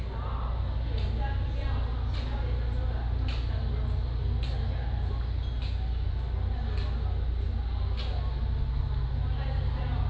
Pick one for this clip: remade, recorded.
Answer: recorded